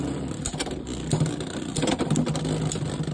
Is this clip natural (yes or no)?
yes